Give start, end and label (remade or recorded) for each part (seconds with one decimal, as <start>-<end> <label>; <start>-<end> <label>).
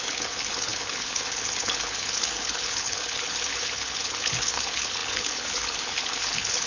0.0-6.7 remade